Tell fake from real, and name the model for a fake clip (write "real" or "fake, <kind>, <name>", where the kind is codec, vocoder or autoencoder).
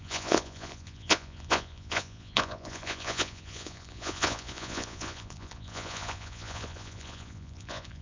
fake, vocoder, Vocos